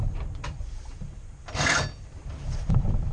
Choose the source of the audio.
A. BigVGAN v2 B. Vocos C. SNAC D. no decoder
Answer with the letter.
A